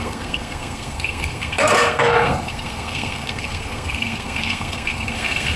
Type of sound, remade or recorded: remade